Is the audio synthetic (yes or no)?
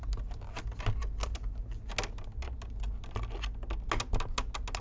no